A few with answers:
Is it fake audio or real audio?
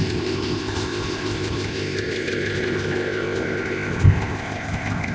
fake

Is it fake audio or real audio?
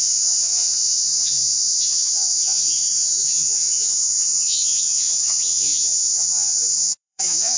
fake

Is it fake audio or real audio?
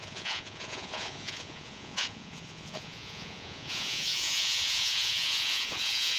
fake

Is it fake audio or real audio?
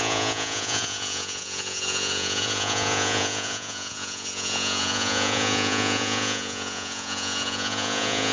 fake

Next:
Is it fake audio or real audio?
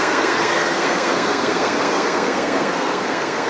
fake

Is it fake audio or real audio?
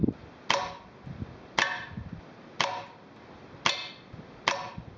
real